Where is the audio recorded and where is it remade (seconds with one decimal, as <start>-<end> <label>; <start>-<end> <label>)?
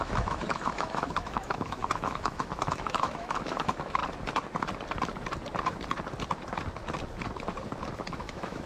0.0-4.0 remade; 4.0-8.2 recorded; 8.2-8.7 remade